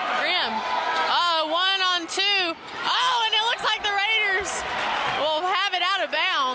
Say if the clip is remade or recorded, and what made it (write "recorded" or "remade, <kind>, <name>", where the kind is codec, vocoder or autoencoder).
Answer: recorded